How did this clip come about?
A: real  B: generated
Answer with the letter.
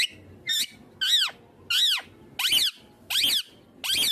A